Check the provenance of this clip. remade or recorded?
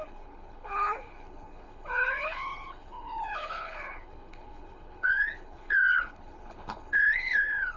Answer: remade